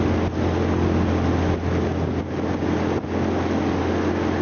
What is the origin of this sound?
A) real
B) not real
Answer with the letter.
A